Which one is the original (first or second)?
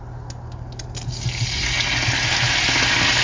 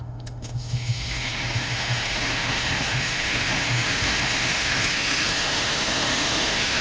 first